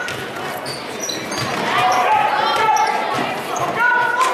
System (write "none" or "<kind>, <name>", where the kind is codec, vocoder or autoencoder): none